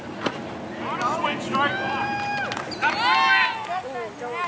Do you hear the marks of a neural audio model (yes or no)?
no